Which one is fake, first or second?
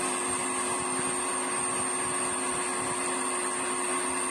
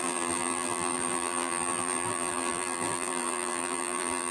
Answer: second